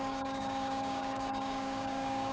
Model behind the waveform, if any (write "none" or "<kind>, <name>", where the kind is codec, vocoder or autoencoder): codec, DAC